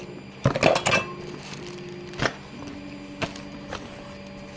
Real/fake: real